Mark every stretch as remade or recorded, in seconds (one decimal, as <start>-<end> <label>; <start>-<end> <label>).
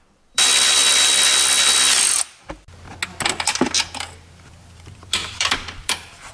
0.0-0.8 remade; 0.8-4.6 recorded; 4.6-6.3 remade